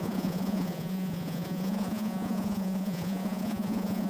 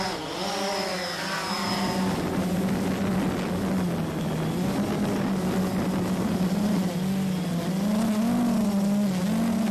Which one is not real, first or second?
first